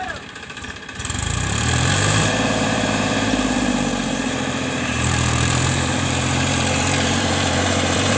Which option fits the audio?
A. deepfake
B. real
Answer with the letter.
A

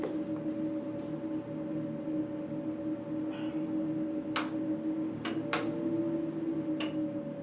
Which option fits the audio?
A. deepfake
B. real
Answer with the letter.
B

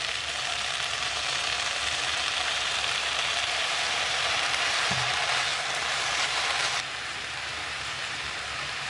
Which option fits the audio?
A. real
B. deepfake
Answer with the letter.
B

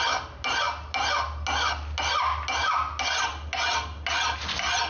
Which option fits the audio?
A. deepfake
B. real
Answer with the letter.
B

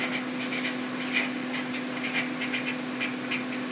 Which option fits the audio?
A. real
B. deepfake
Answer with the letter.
A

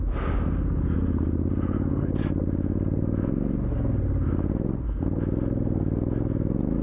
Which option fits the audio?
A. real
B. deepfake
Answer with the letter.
A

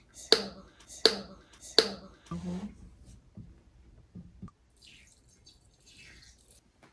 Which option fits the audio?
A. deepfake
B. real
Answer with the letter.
B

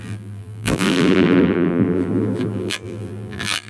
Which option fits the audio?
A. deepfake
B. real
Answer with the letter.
A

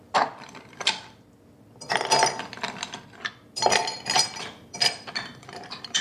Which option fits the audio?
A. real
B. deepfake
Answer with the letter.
B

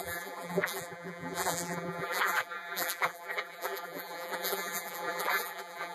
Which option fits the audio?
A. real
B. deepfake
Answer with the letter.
B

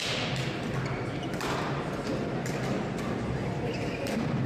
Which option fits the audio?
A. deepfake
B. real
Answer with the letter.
B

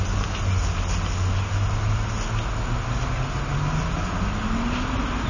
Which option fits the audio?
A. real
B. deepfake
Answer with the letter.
A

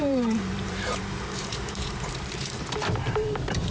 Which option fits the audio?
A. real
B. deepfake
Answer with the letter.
B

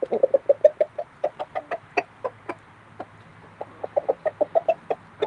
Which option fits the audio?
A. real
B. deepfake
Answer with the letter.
A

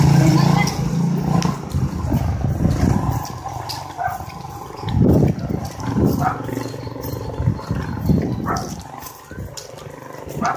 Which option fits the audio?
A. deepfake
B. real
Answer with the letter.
B